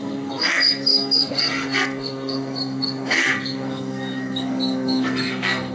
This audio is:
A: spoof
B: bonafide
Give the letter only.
A